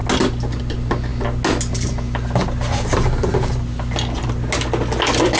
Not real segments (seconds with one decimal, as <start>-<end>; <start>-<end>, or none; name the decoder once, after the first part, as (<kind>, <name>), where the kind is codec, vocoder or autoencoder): none